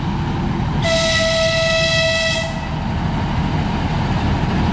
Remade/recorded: recorded